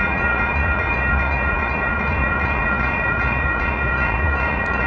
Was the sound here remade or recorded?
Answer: remade